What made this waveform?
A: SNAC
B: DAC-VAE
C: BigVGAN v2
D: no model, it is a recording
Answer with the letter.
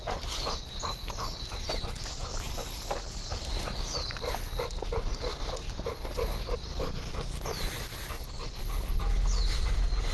D